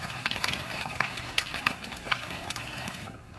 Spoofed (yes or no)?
yes